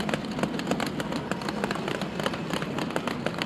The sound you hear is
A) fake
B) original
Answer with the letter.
B